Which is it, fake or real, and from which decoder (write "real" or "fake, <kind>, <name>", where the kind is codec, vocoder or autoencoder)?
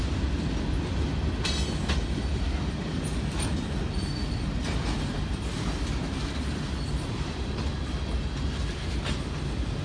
real